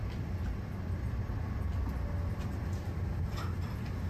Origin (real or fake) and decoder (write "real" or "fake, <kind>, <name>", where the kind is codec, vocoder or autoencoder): real